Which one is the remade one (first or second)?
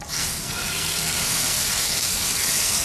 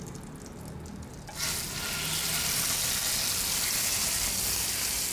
first